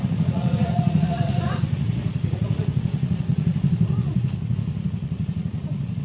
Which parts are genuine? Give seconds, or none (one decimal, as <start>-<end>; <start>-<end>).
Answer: none